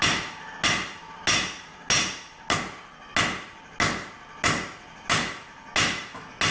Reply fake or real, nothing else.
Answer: real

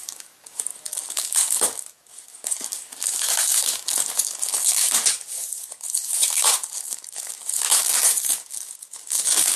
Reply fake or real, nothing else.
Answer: fake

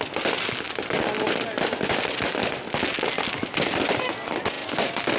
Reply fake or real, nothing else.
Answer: real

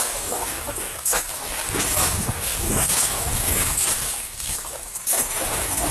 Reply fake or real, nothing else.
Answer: fake